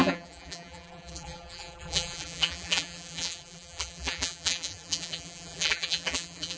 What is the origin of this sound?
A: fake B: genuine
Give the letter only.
A